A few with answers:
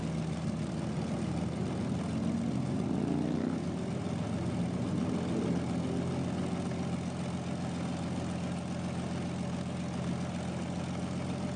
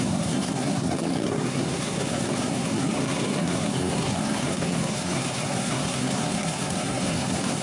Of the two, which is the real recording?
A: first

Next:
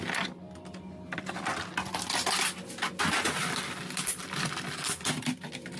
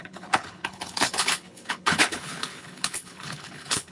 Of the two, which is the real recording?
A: first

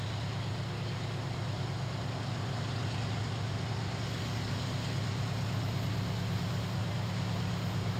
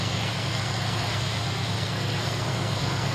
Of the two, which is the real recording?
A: first